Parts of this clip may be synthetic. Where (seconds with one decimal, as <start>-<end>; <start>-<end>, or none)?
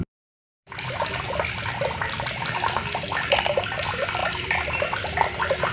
0.0-0.7; 2.0-2.5; 4.2-5.7